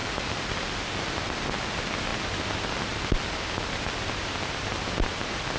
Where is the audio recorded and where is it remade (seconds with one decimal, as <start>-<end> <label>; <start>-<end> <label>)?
0.0-5.6 recorded